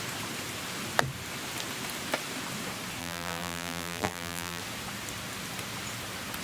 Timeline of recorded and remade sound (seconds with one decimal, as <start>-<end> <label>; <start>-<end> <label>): 0.0-3.0 recorded; 3.0-4.6 remade; 4.6-6.4 recorded